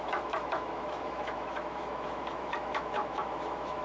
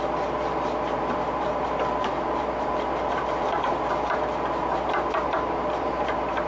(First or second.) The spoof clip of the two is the first